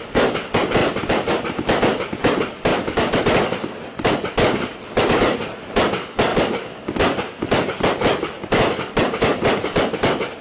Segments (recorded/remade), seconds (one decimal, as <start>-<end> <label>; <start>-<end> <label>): 0.0-0.8 recorded; 0.8-1.3 remade; 1.3-2.7 recorded; 2.7-3.2 remade; 3.2-10.4 recorded